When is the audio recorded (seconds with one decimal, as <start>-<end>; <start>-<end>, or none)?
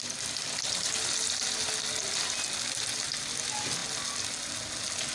0.0-5.1